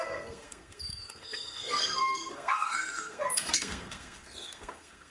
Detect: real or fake fake